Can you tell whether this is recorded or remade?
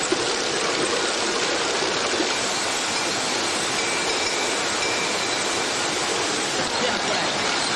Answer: recorded